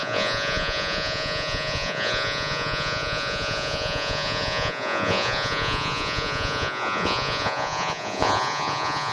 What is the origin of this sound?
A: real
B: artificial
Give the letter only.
B